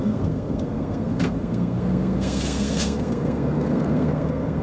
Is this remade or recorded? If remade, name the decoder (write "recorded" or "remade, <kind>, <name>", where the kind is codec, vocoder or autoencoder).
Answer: remade, codec, SNAC